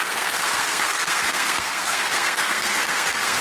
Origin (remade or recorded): remade